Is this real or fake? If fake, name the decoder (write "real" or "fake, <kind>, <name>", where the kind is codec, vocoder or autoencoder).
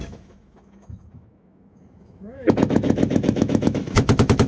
fake, autoencoder, DAC-VAE